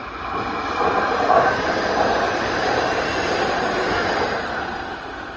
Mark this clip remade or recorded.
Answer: recorded